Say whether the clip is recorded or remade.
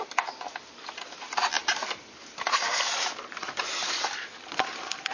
remade